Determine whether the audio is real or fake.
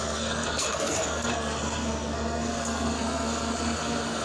fake